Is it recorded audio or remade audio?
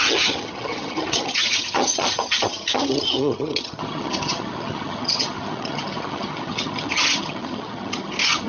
remade